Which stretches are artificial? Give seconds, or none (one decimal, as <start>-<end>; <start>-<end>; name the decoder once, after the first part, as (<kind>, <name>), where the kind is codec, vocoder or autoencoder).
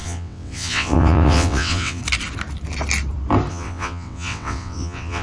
0.0-2.0 (vocoder, WaveNeXt); 3.5-5.2